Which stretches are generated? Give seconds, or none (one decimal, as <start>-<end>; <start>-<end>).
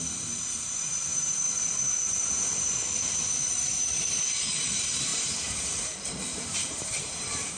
0.0-7.6